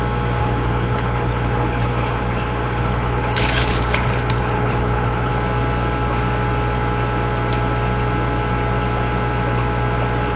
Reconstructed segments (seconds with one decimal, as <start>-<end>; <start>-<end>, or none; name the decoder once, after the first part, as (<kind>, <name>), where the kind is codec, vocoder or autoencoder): 0.4-5.3 (codec, HILCodec)